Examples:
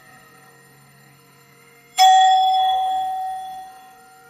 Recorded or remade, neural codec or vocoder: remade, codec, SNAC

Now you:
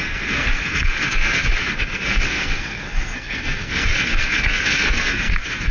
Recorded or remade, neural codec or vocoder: remade, codec, SNAC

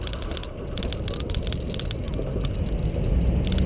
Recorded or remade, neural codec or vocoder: recorded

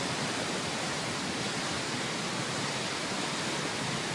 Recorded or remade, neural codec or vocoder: recorded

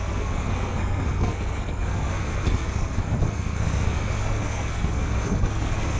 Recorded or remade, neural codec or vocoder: remade, codec, SNAC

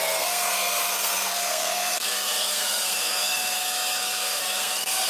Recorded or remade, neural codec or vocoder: remade, codec, SNAC